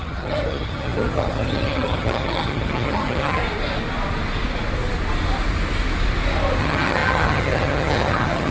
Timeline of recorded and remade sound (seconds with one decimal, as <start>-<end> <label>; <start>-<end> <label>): 0.0-3.4 remade; 3.4-6.6 recorded; 6.6-8.5 remade